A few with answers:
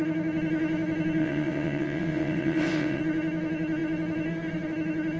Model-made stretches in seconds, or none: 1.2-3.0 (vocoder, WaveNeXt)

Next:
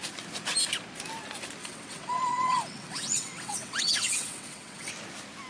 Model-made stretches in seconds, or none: 1.6-4.9 (vocoder, WaveNeXt)

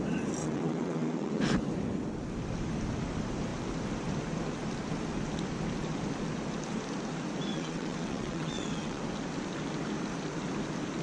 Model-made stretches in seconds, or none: 0.4-1.4 (vocoder, WaveNeXt); 7.5-9.0

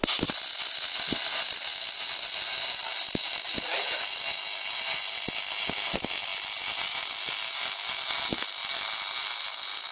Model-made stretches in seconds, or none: none

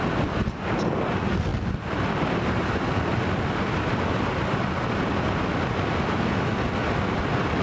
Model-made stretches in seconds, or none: none

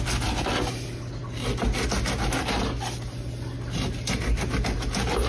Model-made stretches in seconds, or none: none

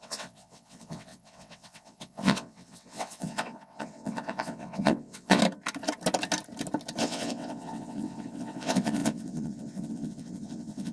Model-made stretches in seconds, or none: 0.0-5.4 (vocoder, WaveNeXt); 7.0-10.9

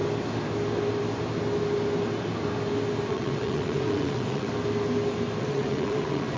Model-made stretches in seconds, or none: 3.1-4.5 (vocoder, WaveNeXt); 5.4-6.4